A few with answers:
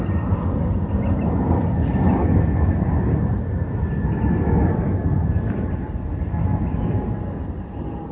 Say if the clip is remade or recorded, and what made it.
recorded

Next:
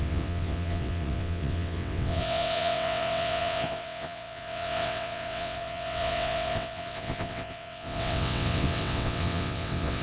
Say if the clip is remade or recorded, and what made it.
remade, vocoder, WaveNeXt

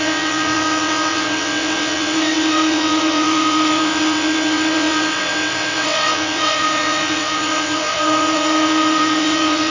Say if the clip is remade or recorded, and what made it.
remade, vocoder, WaveNeXt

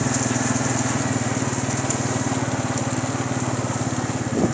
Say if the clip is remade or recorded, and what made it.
recorded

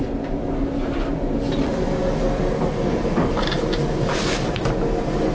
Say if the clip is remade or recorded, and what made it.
recorded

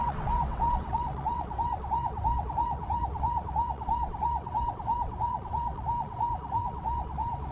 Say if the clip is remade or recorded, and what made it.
remade, vocoder, WaveNeXt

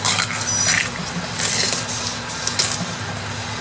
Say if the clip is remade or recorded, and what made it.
recorded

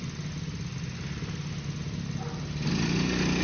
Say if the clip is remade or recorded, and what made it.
recorded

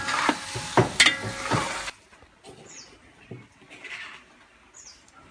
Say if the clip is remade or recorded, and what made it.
recorded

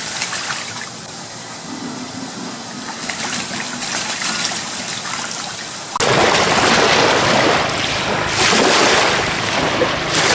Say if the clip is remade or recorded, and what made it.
recorded